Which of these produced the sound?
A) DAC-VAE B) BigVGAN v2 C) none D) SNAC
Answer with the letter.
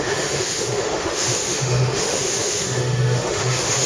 A